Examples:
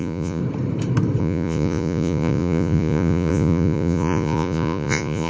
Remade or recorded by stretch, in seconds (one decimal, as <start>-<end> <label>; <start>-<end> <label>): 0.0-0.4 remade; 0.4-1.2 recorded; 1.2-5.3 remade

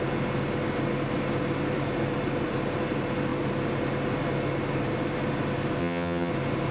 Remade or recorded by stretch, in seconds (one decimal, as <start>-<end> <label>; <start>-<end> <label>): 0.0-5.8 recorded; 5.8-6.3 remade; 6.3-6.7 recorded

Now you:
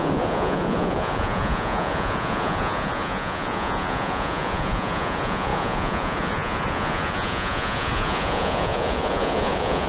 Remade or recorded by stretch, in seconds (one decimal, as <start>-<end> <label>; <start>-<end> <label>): 0.0-9.9 remade

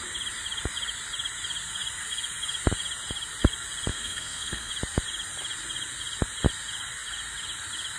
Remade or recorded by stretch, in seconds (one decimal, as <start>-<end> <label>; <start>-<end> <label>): 0.0-3.9 recorded; 3.9-4.7 remade; 4.7-8.0 recorded

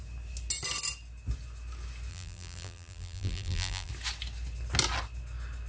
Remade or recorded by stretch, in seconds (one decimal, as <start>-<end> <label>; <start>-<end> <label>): 0.0-2.1 recorded; 2.1-3.9 remade; 3.9-5.7 recorded